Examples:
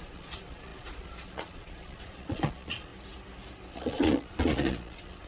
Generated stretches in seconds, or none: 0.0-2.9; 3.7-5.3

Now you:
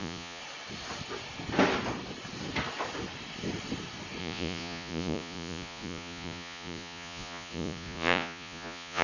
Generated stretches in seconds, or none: 0.0-0.4; 4.2-9.0

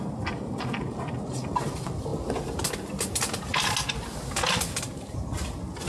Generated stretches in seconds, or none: none

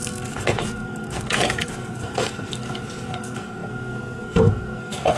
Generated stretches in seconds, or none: 0.0-5.2

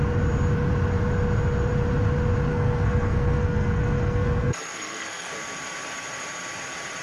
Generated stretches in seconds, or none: 2.5-5.3

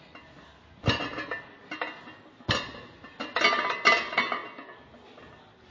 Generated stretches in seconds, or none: none